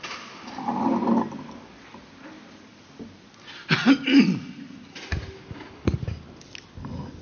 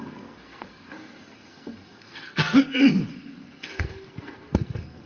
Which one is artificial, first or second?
second